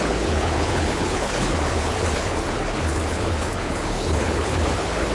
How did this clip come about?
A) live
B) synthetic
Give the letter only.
B